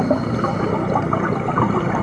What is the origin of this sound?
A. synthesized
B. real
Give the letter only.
B